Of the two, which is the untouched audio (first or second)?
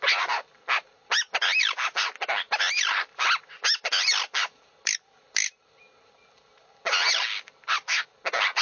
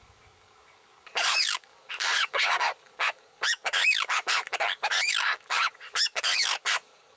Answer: first